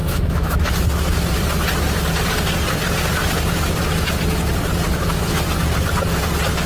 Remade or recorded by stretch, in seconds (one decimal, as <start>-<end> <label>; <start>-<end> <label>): 0.0-0.7 remade; 0.7-6.7 recorded